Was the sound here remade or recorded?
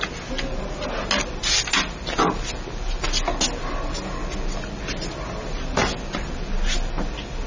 recorded